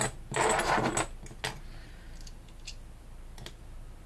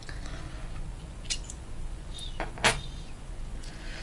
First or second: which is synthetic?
second